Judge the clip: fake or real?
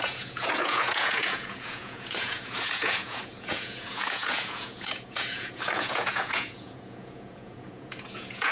fake